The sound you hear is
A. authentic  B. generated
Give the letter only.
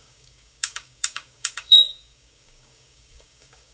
B